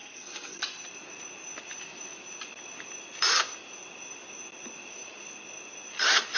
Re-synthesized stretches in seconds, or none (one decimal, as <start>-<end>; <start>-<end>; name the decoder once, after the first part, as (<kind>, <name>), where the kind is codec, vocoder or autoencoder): 0.0-0.6 (codec, SNAC)